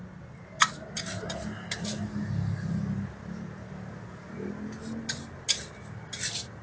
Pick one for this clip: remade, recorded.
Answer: recorded